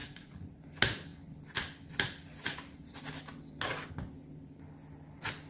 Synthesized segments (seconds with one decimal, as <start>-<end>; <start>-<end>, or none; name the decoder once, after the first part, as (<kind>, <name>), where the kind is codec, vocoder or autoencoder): 0.0-0.6 (vocoder, Vocos)